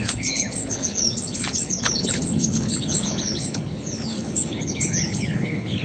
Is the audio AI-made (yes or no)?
yes